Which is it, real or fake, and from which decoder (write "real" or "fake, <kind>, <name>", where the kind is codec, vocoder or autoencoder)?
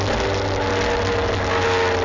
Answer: real